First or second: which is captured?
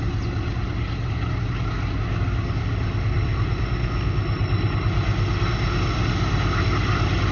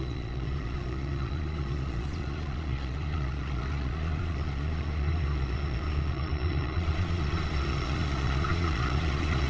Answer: first